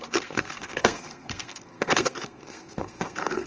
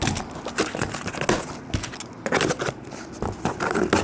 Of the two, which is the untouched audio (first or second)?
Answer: second